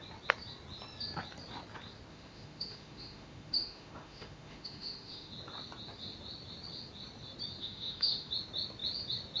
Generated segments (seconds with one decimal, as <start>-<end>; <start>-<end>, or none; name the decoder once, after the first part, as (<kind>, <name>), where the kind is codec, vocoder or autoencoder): 2.1-5.3 (autoencoder, DAC-VAE); 7.6-8.3